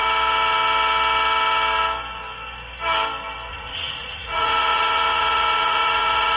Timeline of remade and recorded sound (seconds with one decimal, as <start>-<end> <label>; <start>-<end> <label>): 0.0-3.5 recorded; 3.5-6.4 remade